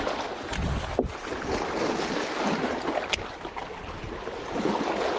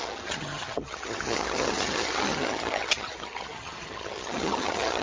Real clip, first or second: first